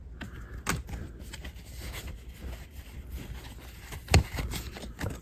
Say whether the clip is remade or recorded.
recorded